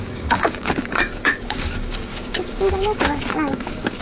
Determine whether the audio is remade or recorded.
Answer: remade